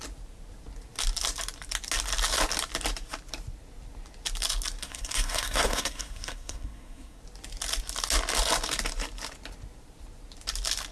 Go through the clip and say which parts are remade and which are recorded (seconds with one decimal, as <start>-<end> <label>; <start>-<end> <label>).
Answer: 0.0-4.8 recorded; 4.8-7.2 remade; 7.2-10.9 recorded

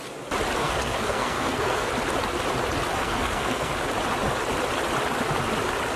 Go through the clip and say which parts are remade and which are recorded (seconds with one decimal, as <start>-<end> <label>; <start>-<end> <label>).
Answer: 0.0-0.6 recorded; 0.6-1.9 remade; 1.9-3.0 recorded; 3.0-3.7 remade; 3.7-6.0 recorded

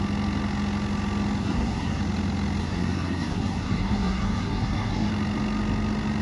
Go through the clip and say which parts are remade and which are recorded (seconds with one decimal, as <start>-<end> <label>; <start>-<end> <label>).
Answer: 0.0-1.4 recorded; 1.4-2.0 remade; 2.0-2.6 recorded; 2.6-5.1 remade; 5.1-6.2 recorded